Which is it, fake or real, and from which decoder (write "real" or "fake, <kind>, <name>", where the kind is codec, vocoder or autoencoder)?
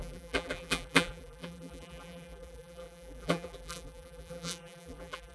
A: fake, vocoder, BigVGAN v2